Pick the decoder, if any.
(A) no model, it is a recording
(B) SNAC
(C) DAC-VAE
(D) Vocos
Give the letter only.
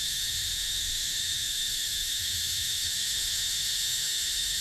C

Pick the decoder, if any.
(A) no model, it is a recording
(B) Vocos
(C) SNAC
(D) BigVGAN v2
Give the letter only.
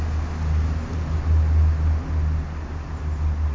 A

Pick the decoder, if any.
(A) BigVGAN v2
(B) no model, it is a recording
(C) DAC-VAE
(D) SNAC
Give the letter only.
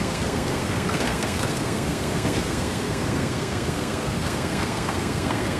D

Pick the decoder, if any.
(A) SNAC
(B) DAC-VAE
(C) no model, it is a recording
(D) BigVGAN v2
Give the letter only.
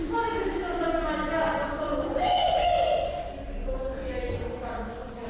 C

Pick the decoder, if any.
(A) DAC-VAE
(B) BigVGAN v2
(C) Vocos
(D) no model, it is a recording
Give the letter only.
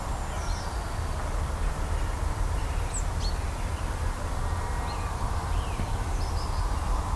D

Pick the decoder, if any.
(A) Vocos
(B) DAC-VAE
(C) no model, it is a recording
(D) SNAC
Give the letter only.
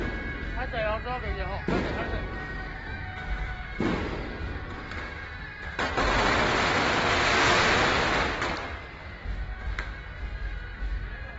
C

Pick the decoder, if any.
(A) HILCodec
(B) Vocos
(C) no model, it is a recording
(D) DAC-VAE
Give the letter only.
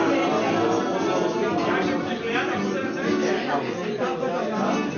C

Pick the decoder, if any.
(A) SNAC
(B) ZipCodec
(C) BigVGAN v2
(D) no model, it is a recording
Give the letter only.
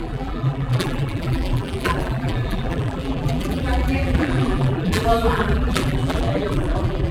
C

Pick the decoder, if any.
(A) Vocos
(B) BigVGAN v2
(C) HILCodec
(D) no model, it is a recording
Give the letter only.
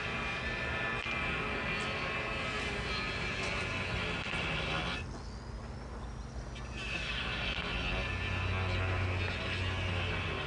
D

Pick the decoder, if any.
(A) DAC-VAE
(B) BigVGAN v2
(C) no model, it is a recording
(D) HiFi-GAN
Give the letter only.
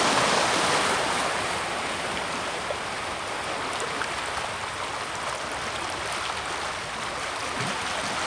C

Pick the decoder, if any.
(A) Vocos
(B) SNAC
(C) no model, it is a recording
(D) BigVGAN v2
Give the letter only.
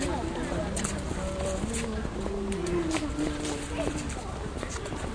C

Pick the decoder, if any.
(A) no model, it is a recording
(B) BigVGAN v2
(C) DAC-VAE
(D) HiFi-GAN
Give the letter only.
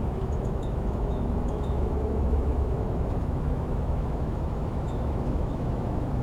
C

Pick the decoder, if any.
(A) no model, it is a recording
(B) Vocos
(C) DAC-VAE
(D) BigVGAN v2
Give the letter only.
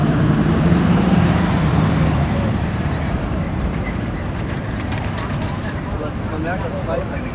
D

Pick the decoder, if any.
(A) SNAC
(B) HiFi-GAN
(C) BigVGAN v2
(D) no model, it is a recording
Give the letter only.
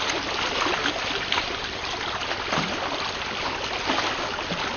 D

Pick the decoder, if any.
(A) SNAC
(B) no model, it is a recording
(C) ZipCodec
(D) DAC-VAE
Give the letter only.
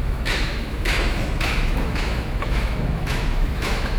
D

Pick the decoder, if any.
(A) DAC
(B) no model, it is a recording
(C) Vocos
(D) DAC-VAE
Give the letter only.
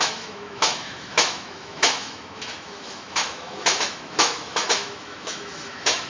D